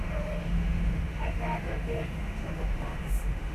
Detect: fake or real fake